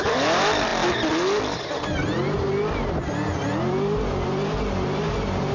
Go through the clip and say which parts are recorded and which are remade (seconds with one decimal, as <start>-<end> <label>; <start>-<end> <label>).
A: 0.0-5.5 recorded